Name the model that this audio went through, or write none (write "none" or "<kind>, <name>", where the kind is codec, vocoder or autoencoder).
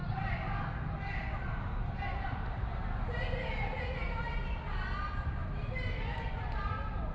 none